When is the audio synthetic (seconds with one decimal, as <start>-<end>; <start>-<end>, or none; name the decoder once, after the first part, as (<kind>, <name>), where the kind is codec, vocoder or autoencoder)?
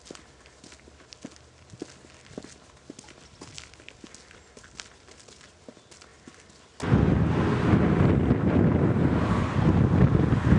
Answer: none